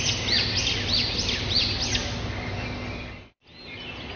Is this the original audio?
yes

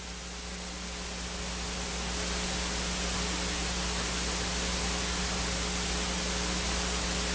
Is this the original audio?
yes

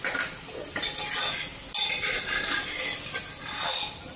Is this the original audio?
yes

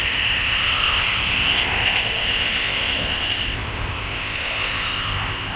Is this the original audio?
no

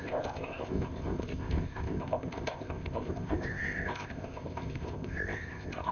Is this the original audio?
no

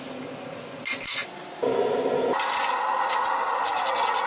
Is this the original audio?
yes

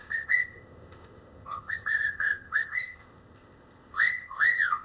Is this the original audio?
no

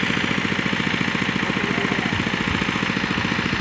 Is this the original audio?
yes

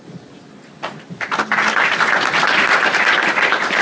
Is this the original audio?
yes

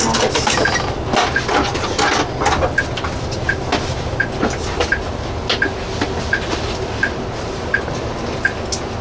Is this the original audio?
yes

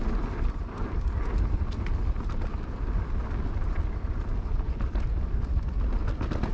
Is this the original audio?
yes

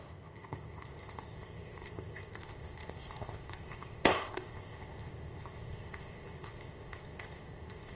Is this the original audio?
no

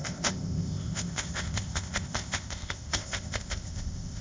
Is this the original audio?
no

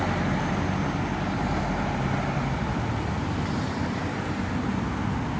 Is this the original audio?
yes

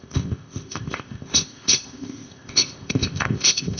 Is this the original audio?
no